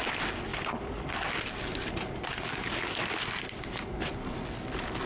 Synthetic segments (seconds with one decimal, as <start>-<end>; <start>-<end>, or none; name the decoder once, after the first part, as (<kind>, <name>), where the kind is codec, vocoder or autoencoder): 0.5-3.6 (vocoder, BigVGAN v2)